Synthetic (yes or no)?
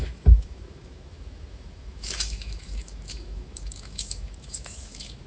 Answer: yes